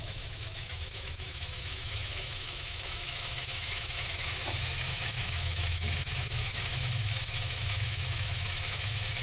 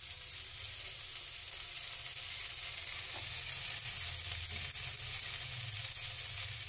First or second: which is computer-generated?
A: first